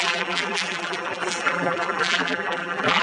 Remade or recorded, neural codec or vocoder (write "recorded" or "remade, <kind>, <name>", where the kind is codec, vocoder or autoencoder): remade, vocoder, BigVGAN v2